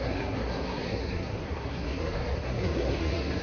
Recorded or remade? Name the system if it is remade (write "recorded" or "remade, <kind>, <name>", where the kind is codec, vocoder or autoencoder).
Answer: remade, codec, SNAC